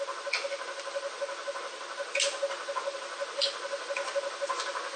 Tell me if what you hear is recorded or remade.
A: recorded